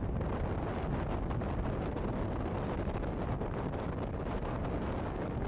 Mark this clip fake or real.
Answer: real